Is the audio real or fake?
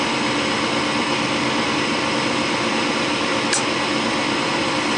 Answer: real